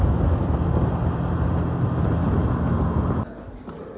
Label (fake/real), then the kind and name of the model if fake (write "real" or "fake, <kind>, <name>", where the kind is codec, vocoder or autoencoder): real